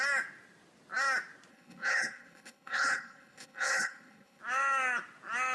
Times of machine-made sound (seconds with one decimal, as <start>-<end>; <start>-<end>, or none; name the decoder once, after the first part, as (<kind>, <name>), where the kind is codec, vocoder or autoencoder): 1.5-4.4 (codec, HILCodec)